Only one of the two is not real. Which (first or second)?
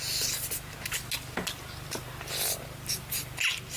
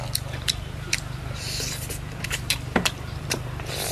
second